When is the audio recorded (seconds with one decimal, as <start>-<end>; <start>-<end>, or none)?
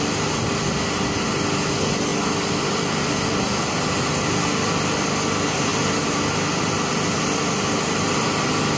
0.0-8.8